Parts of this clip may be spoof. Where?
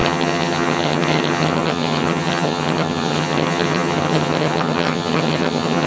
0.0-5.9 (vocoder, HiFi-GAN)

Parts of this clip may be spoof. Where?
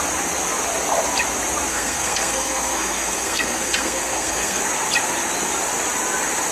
1.7-4.6 (codec, SNAC)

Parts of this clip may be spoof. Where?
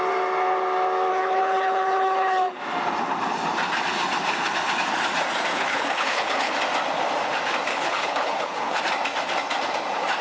1.1-2.6 (codec, HILCodec); 5.5-6.5; 7.7-8.8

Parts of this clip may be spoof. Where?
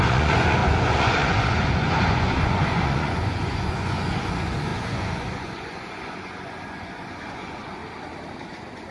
0.0-7.8 (vocoder, Vocos); 8.5-8.9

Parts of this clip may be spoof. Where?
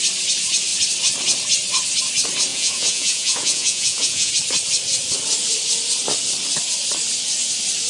2.5-4.3 (vocoder, Vocos)